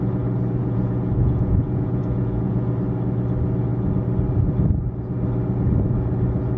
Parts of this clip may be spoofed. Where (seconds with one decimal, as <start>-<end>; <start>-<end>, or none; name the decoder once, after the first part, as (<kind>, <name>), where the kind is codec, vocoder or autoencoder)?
0.6-2.7 (vocoder, Vocos)